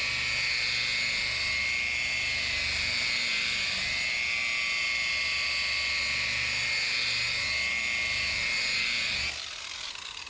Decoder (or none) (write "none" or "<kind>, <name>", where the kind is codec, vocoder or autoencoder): none